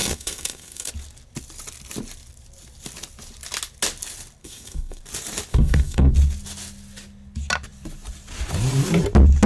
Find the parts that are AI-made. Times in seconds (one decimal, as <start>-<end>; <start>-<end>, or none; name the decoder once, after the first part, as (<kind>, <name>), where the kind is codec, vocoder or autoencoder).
0.0-0.9 (codec, SNAC); 4.4-5.0; 5.5-6.1